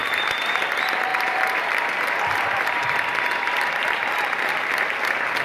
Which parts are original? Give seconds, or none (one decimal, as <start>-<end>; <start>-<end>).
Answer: 0.6-1.1; 3.7-5.4